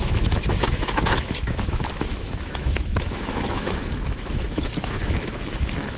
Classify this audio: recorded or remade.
remade